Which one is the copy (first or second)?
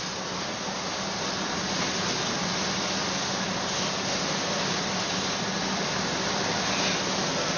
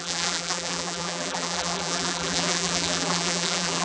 second